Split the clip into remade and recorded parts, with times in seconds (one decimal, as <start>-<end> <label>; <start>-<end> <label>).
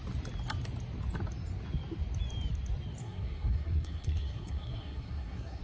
0.0-3.0 recorded; 3.0-5.6 remade